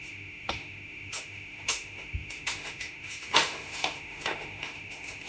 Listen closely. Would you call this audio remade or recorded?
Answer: remade